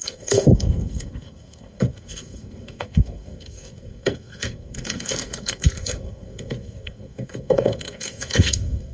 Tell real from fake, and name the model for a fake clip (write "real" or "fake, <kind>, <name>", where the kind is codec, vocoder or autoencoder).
fake, codec, SNAC